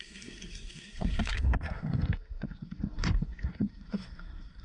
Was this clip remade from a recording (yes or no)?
yes